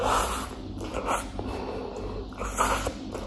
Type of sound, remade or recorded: recorded